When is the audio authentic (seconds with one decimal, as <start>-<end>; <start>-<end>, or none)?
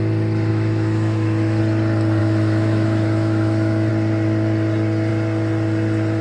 0.0-0.5; 1.6-2.2; 3.9-6.2